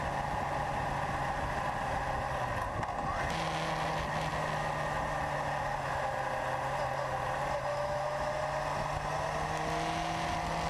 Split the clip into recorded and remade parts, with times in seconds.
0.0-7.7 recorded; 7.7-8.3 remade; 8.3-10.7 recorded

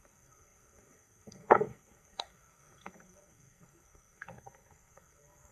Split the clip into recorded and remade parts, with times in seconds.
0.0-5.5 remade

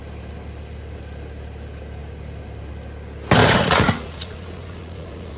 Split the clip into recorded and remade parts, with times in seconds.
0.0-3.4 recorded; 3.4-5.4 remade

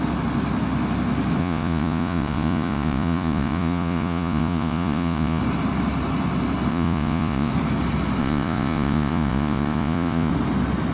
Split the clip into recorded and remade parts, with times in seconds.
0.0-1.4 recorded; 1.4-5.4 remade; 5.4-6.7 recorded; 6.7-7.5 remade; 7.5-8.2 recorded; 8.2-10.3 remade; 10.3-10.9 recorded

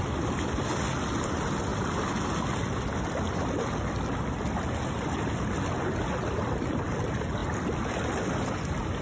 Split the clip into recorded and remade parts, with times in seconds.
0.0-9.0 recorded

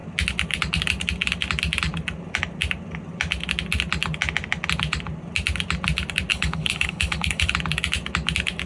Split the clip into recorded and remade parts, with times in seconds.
0.0-6.3 recorded; 6.3-7.5 remade; 7.5-8.7 recorded

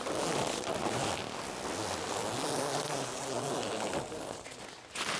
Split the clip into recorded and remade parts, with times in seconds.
0.0-5.2 recorded

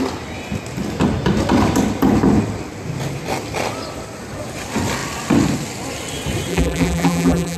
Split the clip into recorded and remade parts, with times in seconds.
0.0-6.5 recorded; 6.5-7.6 remade